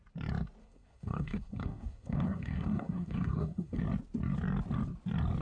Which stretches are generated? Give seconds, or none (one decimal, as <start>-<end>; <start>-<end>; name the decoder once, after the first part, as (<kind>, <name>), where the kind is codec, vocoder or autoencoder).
0.6-3.8 (codec, SNAC)